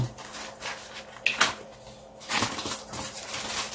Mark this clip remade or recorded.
recorded